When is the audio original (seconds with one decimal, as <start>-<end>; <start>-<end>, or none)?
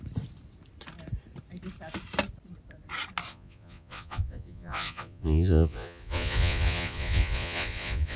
0.0-3.3